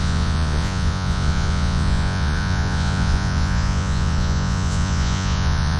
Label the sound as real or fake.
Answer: fake